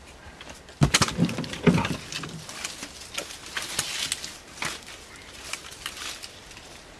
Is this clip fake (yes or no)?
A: no